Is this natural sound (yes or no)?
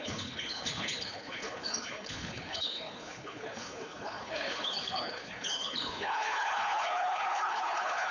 no